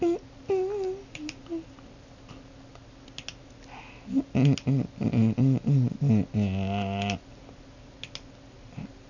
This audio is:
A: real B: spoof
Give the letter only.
A